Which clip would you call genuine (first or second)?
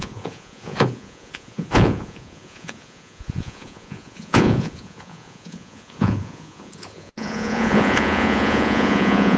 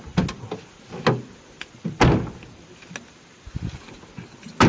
second